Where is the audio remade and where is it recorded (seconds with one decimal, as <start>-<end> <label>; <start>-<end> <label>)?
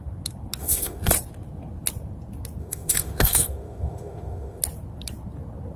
0.0-0.6 recorded; 0.6-1.1 remade; 1.1-2.6 recorded; 2.6-4.6 remade; 4.6-5.8 recorded